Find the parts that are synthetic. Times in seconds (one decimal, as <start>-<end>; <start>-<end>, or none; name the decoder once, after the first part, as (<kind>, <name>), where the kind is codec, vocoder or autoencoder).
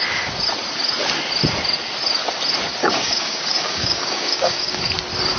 2.8-4.8 (codec, DAC)